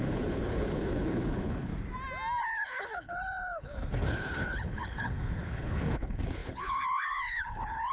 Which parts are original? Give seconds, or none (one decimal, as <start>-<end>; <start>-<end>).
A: 1.7-2.4